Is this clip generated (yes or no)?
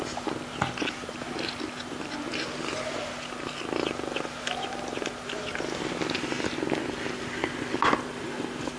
no